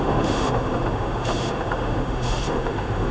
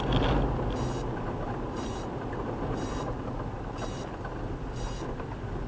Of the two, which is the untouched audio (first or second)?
second